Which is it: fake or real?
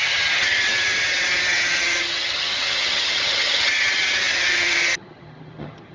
fake